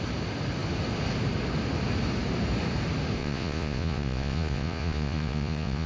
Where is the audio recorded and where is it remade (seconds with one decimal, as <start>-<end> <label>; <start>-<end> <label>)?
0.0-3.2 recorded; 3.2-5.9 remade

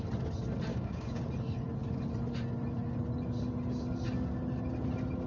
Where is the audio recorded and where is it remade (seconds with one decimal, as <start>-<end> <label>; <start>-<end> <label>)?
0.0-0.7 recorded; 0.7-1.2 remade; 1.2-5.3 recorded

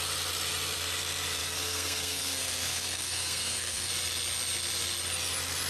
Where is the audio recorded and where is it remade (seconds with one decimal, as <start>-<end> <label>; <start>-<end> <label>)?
0.0-1.4 recorded; 1.4-3.9 remade; 3.9-5.7 recorded